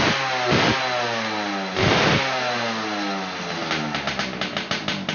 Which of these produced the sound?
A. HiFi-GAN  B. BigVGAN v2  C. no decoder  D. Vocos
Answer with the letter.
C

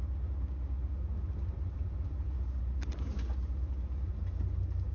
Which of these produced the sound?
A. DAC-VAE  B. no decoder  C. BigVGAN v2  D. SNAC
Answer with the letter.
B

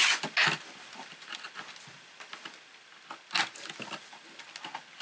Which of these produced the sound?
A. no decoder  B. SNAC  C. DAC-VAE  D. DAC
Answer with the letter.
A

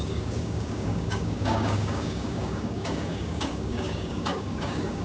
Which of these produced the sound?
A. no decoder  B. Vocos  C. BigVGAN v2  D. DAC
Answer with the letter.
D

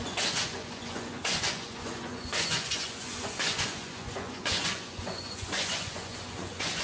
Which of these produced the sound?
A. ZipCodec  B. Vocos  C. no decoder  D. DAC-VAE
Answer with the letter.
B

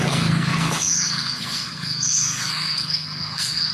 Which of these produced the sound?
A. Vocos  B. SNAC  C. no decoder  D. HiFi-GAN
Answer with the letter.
B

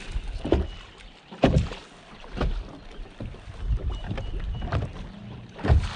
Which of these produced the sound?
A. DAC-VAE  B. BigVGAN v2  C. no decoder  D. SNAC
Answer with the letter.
C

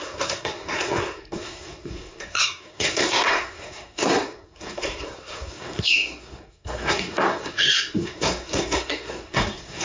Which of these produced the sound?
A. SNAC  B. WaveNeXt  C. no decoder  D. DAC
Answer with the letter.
A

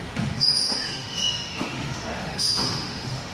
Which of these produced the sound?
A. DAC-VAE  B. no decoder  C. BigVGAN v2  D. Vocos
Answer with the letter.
A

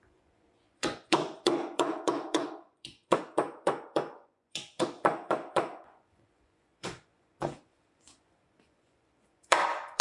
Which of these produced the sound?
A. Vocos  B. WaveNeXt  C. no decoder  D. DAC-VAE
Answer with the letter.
A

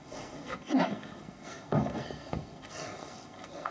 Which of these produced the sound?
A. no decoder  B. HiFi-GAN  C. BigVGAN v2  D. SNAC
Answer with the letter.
D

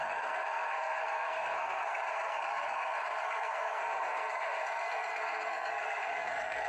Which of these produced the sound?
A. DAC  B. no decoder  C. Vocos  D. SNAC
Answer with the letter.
D